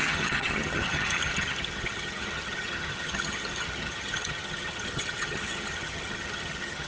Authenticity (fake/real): fake